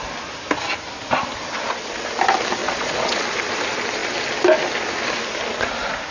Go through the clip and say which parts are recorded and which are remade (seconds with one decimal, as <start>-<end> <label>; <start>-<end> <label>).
0.0-2.6 recorded; 2.6-3.2 remade; 3.2-6.1 recorded